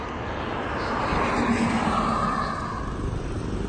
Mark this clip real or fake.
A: real